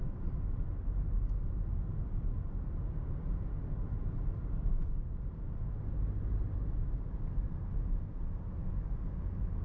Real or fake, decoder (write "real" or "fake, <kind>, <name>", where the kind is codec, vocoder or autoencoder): real